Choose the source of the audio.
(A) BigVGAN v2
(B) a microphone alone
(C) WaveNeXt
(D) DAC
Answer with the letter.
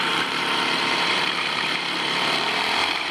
A